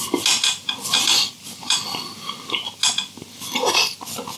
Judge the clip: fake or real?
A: real